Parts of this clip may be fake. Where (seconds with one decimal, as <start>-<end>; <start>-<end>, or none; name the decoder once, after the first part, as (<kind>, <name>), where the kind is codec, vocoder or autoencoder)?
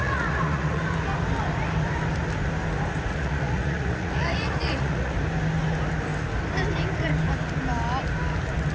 0.0-0.8 (vocoder, Vocos); 3.1-5.1